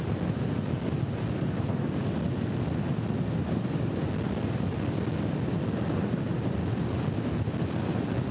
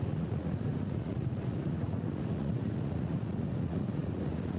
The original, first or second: first